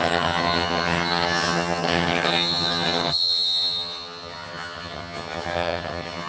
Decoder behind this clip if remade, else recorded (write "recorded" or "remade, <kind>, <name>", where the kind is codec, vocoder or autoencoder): remade, vocoder, HiFi-GAN